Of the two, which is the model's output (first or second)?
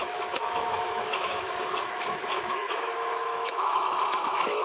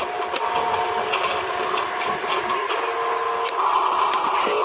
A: first